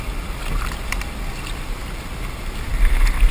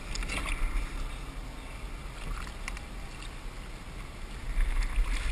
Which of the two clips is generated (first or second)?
first